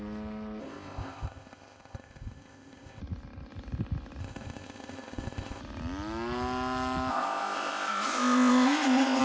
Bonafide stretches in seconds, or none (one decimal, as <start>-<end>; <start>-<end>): 0.0-0.6; 3.0-4.2; 5.6-7.1